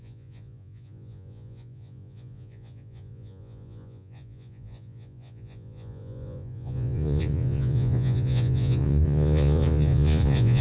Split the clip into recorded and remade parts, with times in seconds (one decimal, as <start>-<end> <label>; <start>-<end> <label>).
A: 0.0-10.6 remade